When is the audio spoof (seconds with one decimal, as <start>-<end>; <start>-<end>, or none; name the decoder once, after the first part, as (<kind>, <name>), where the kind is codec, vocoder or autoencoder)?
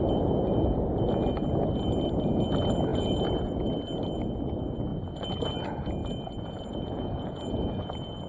2.9-3.7 (vocoder, Vocos); 4.9-5.5; 6.0-8.3